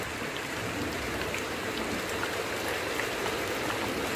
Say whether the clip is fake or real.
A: real